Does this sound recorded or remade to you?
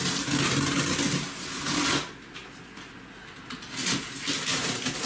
recorded